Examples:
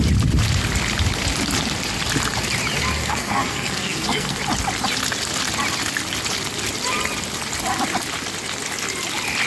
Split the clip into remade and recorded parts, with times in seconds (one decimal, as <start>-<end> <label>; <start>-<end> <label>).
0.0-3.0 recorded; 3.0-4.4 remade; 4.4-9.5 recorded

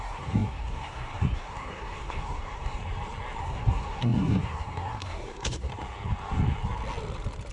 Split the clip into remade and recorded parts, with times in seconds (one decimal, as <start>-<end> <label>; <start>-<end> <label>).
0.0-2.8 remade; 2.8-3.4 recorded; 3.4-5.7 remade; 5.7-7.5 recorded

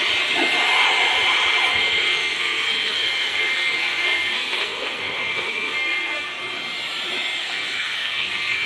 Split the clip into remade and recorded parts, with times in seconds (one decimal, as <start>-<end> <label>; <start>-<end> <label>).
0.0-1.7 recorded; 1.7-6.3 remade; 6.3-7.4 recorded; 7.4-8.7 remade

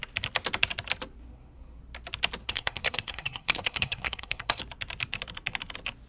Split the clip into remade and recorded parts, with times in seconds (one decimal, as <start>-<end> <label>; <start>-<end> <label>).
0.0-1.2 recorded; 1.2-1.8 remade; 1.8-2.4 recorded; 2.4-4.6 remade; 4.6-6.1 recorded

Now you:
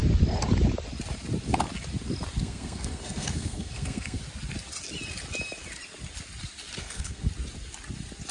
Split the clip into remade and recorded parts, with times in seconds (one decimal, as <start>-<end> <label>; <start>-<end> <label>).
0.0-2.4 recorded; 2.4-4.2 remade; 4.2-6.8 recorded; 6.8-7.3 remade; 7.3-8.3 recorded